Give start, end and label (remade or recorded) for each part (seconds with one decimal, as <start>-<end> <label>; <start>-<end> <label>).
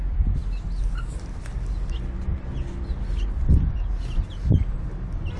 0.0-5.4 recorded